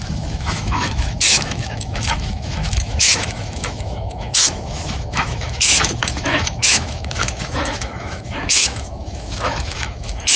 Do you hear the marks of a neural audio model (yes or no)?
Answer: yes